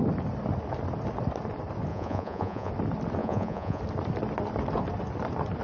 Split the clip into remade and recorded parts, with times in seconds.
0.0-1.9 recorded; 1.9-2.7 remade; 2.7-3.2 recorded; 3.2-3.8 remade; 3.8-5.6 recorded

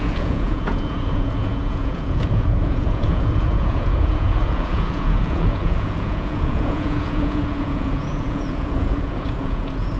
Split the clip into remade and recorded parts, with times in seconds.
0.0-10.0 remade

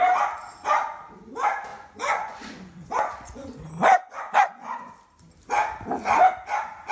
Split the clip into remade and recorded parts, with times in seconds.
0.0-1.7 recorded; 1.7-4.9 remade; 4.9-6.9 recorded

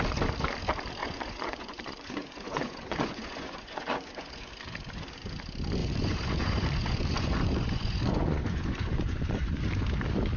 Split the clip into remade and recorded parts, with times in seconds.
0.0-1.0 recorded; 1.0-4.5 remade; 4.5-5.8 recorded; 5.8-9.6 remade; 9.6-10.4 recorded

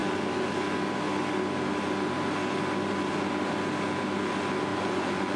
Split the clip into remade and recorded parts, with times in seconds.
0.0-4.7 recorded; 4.7-5.4 remade

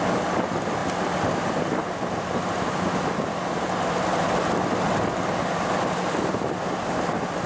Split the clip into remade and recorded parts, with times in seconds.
0.0-7.5 recorded

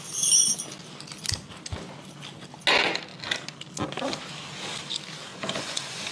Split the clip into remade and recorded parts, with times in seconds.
0.0-5.3 recorded; 5.3-6.1 remade

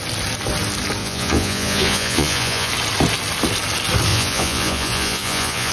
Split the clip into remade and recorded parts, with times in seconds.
0.0-1.0 recorded; 1.0-2.7 remade; 2.7-4.1 recorded; 4.1-5.7 remade